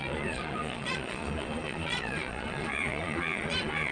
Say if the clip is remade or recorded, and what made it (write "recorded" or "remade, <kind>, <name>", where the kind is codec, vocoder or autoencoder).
remade, vocoder, Vocos